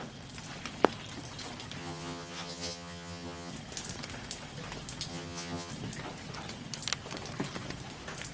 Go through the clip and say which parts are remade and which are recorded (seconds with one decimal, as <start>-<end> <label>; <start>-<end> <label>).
0.0-1.8 recorded; 1.8-3.5 remade; 3.5-5.1 recorded; 5.1-5.7 remade; 5.7-8.3 recorded